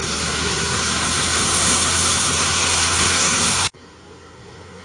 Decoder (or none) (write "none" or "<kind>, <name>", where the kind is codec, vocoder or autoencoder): codec, SNAC